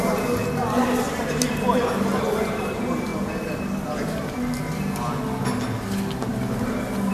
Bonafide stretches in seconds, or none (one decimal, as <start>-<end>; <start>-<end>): 0.0-7.1